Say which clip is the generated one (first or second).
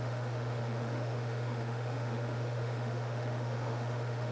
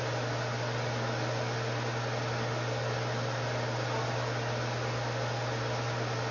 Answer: first